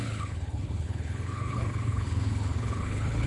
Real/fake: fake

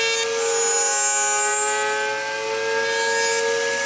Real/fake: real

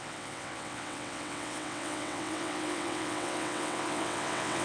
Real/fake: fake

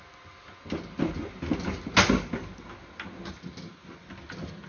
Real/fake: real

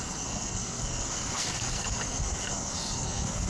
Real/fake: fake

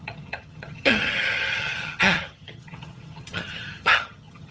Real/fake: fake